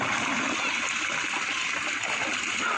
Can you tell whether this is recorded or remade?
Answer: recorded